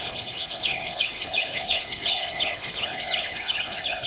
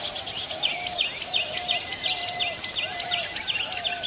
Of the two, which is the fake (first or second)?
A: first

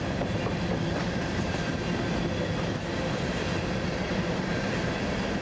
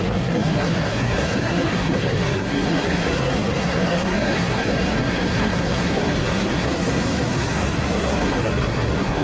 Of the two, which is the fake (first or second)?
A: second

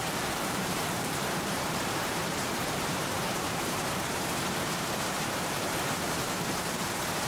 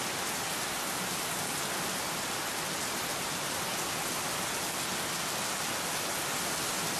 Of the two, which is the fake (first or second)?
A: first